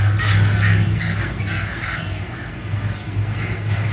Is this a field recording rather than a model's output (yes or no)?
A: no